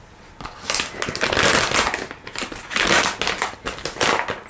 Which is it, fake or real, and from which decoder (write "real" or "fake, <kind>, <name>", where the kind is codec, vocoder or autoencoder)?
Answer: real